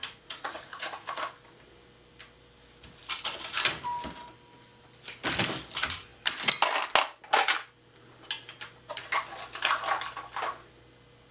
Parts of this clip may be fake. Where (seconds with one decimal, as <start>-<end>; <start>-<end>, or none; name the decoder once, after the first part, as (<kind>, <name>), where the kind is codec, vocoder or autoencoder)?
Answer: 0.0-1.2 (vocoder, Vocos)